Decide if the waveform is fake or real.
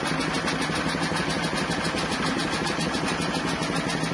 real